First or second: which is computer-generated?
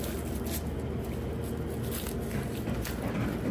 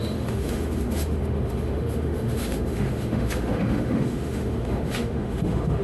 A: second